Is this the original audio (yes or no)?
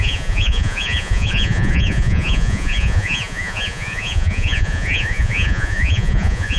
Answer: no